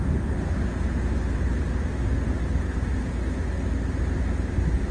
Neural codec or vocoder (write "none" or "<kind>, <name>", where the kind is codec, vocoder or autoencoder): none